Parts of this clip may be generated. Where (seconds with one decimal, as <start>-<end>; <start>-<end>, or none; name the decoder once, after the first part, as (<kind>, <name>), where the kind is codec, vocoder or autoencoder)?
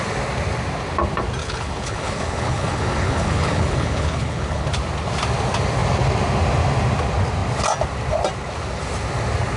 1.4-4.7 (codec, HILCodec)